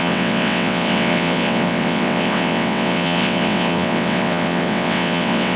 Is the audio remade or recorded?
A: remade